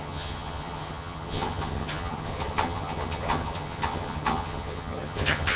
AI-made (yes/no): yes